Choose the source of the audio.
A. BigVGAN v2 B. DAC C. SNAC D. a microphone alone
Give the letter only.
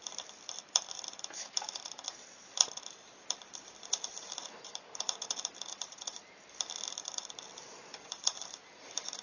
A